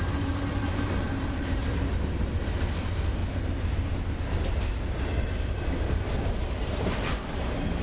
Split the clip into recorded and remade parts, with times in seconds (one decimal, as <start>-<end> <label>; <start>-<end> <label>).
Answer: 0.0-1.6 remade; 1.6-2.3 recorded; 2.3-3.2 remade; 3.2-5.4 recorded; 5.4-7.8 remade